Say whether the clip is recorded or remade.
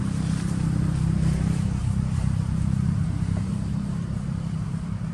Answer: remade